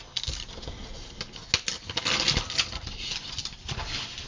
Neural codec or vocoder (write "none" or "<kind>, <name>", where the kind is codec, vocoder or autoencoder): none